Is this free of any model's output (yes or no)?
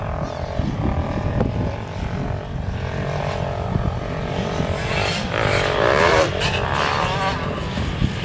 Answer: yes